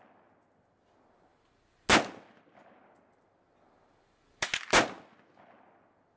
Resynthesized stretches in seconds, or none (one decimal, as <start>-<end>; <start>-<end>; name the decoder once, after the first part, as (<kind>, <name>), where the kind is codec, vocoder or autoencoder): none